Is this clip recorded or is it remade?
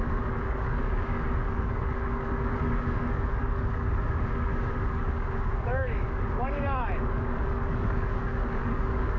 remade